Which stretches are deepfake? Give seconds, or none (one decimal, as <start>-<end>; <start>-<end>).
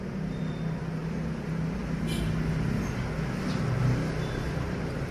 none